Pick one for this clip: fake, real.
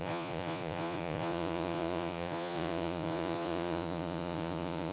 fake